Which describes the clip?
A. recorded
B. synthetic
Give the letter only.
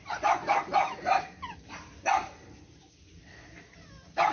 A